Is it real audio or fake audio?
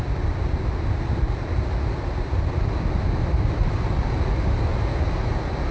real